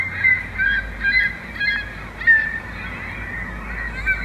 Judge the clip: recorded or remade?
recorded